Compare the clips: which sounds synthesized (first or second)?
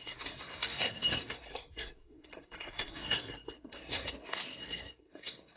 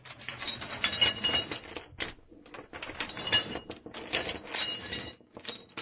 first